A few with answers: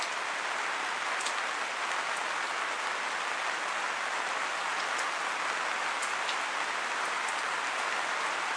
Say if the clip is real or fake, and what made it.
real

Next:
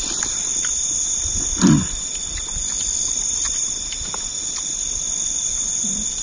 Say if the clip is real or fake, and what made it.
fake, vocoder, BigVGAN v2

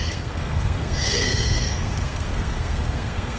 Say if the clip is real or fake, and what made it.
fake, codec, SNAC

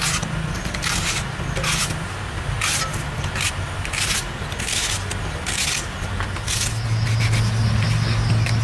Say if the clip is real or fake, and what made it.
real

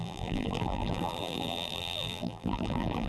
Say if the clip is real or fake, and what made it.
fake, vocoder, BigVGAN v2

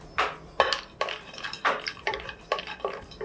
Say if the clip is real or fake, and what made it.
fake, vocoder, BigVGAN v2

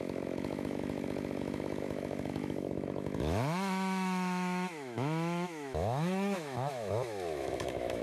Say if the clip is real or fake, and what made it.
fake, autoencoder, DAC-VAE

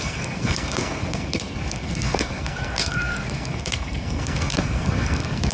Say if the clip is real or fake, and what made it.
fake, codec, SNAC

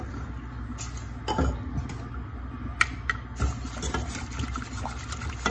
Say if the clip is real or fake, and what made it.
real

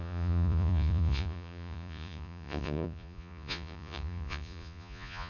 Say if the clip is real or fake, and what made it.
fake, vocoder, Vocos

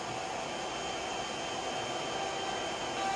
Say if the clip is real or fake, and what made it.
real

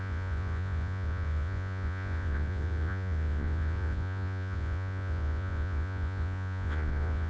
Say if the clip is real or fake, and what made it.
fake, vocoder, Vocos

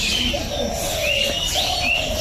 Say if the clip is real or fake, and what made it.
real